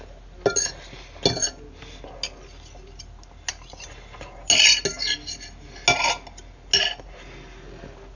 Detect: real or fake real